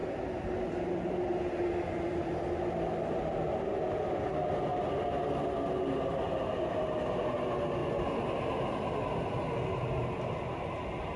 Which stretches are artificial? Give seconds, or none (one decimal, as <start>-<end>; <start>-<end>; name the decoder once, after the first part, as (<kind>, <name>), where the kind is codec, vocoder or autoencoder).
none

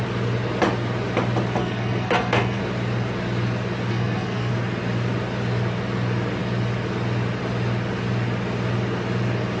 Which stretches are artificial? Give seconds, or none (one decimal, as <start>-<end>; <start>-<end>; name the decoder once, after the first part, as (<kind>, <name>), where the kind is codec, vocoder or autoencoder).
1.6-2.6 (codec, SNAC); 3.9-4.5

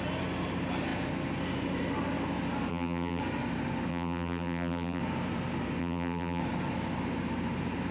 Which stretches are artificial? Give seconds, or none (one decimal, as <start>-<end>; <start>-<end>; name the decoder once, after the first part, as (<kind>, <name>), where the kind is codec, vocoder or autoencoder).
2.7-3.2 (vocoder, BigVGAN v2); 3.9-5.0; 5.8-6.4